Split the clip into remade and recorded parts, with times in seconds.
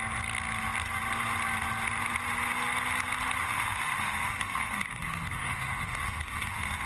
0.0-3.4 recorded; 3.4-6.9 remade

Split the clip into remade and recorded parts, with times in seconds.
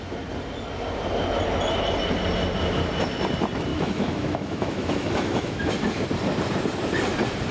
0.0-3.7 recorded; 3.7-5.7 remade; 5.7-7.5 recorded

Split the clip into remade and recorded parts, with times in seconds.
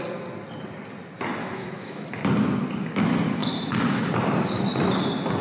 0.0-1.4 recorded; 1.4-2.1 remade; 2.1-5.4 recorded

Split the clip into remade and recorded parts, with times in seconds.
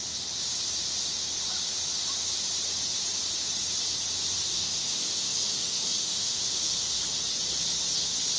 0.0-4.5 recorded; 4.5-7.0 remade; 7.0-8.4 recorded